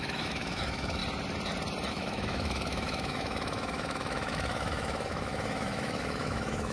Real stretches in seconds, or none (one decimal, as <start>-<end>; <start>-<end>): 1.0-1.9